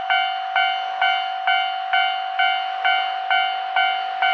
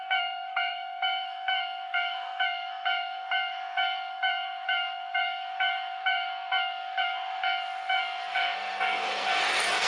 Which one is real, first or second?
first